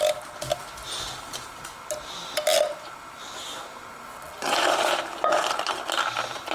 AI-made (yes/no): no